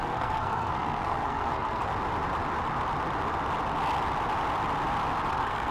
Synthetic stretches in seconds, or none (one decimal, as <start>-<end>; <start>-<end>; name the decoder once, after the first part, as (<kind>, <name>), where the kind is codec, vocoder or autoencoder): 0.0-1.9 (codec, SNAC); 5.3-5.7